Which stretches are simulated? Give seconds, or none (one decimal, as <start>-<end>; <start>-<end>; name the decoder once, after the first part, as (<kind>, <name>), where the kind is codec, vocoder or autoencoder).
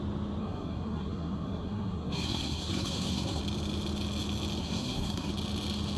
0.4-3.4 (codec, SNAC); 4.6-5.3